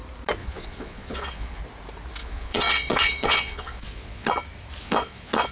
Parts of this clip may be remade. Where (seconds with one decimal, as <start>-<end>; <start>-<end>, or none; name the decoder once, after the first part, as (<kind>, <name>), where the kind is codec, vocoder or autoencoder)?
0.4-1.6 (vocoder, Vocos); 2.2-4.3; 4.8-5.5